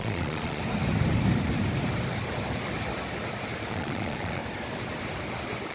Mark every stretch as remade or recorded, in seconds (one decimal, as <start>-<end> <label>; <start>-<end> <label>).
0.0-0.6 remade; 0.6-3.7 recorded; 3.7-4.4 remade; 4.4-5.7 recorded